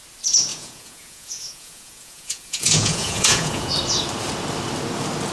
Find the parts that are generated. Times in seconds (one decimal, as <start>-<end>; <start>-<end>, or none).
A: 0.5-3.7